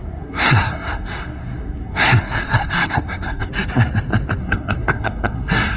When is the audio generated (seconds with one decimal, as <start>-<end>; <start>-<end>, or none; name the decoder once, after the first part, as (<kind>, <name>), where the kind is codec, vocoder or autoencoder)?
0.0-3.5 (codec, SNAC); 4.4-5.8